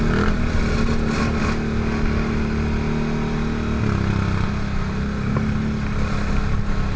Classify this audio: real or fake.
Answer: real